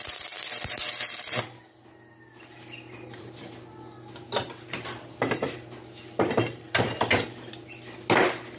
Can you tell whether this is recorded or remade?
recorded